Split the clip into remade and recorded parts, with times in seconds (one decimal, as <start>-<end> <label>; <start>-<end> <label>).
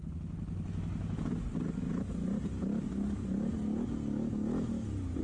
0.0-5.2 recorded